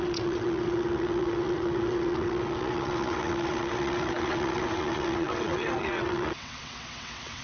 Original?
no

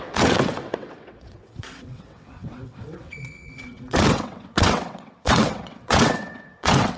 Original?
no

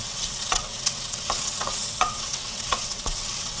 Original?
no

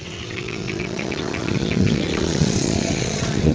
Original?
no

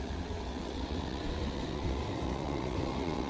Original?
no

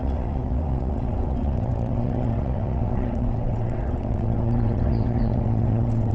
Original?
no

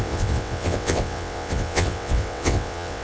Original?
no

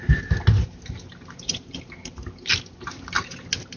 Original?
yes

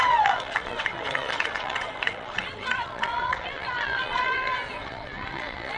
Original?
no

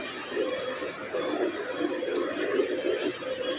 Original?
yes